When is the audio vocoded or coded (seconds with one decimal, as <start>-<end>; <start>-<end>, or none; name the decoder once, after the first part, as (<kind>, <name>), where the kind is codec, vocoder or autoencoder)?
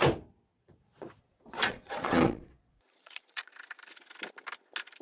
0.5-3.5 (vocoder, Vocos)